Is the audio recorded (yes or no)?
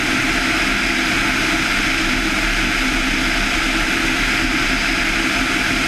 yes